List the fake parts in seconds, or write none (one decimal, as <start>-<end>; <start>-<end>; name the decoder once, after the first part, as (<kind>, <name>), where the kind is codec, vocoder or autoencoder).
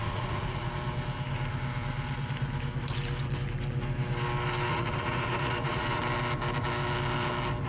0.0-0.7 (vocoder, Vocos); 4.7-6.0